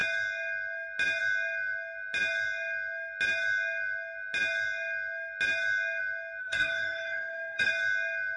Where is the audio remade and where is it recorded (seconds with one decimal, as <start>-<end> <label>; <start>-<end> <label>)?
0.0-6.4 recorded; 6.4-7.7 remade; 7.7-8.4 recorded